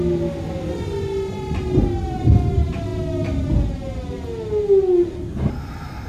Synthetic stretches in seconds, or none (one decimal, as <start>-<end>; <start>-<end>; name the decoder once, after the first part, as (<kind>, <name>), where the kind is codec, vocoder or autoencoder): none